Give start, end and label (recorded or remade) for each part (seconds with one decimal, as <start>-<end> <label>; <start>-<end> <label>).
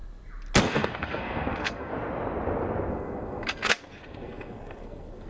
0.0-0.6 recorded; 0.6-1.9 remade; 1.9-2.9 recorded; 2.9-5.3 remade